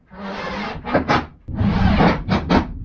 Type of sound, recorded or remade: recorded